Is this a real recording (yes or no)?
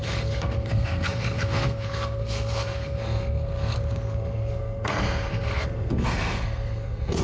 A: no